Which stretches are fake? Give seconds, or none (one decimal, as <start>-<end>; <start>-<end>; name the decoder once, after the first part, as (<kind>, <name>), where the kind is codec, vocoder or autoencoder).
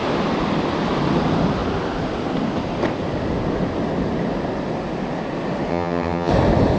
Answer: 5.7-6.3 (vocoder, HiFi-GAN)